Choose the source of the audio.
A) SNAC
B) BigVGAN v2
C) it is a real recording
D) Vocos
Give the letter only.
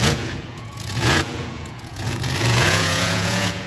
D